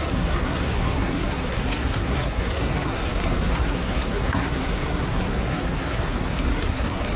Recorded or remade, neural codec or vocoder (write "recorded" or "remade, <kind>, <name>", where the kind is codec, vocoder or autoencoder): remade, codec, SNAC